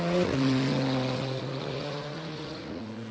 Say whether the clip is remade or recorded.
remade